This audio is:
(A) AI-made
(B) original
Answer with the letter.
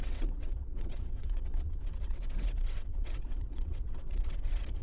A